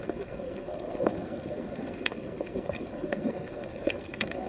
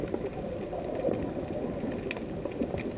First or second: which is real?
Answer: second